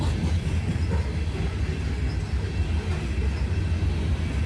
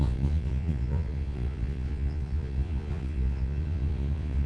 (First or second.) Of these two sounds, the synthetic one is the second